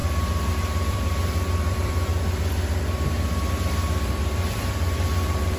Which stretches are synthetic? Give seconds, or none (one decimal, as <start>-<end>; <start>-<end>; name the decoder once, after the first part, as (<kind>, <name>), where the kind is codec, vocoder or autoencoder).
0.0-2.1 (vocoder, BigVGAN v2); 3.5-5.6